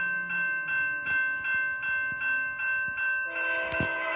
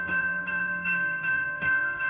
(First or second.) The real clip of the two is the first